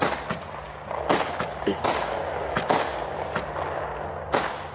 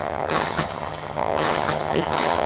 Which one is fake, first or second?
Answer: second